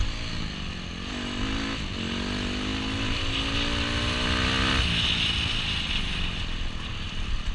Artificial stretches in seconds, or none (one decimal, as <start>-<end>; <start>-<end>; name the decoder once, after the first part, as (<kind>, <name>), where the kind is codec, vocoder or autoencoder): none